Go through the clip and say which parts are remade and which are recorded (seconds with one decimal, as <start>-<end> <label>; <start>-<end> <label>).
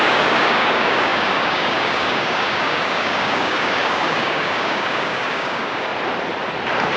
0.0-5.9 remade; 5.9-7.0 recorded